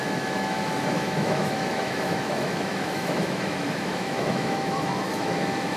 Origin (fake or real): fake